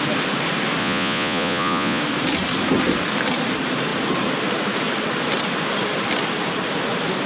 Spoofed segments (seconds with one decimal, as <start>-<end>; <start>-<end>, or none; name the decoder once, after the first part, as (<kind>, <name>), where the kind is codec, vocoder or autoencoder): 0.8-2.0 (vocoder, Vocos)